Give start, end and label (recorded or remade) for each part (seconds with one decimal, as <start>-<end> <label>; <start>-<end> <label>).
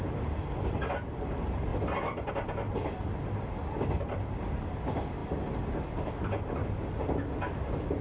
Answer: 0.0-8.0 recorded